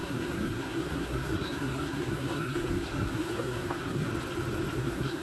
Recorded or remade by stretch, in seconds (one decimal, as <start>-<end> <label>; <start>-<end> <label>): 0.0-4.1 remade; 4.1-4.8 recorded; 4.8-5.2 remade